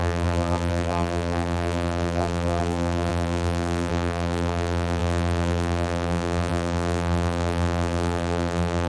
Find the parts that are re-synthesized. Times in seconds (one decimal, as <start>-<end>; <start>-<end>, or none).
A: 0.0-8.9